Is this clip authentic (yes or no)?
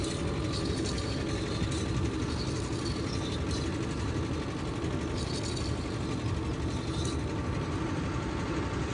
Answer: yes